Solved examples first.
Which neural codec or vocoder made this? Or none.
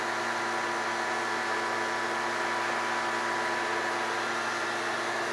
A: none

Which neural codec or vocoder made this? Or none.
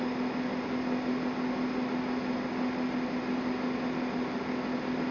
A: none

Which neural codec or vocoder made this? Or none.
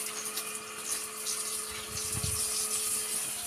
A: none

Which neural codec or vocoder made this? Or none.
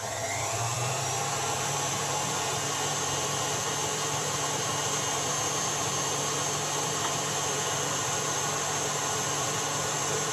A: vocoder, BigVGAN v2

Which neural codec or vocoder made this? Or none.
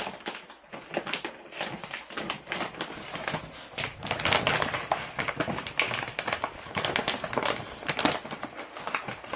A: none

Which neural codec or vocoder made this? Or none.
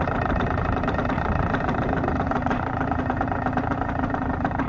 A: vocoder, BigVGAN v2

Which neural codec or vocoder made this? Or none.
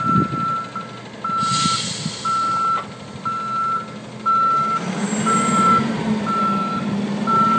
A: none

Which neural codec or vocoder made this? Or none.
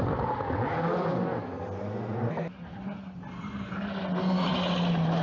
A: none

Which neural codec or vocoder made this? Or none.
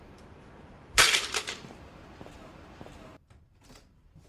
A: vocoder, BigVGAN v2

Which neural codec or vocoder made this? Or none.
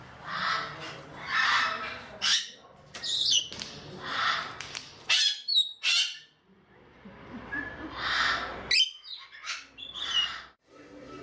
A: none